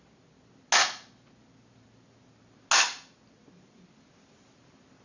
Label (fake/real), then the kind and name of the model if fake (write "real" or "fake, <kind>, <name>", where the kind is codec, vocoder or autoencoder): real